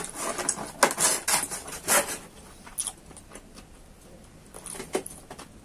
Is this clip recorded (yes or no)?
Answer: yes